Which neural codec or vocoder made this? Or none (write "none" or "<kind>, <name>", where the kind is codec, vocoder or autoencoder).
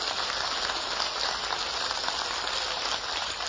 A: none